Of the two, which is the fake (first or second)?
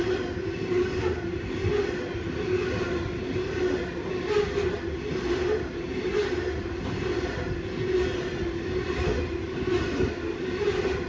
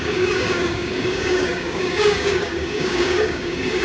second